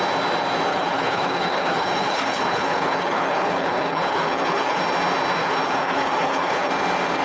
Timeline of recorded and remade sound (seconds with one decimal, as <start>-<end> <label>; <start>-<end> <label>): 0.0-0.7 recorded; 0.7-4.8 remade; 4.8-5.4 recorded; 5.4-6.7 remade; 6.7-7.2 recorded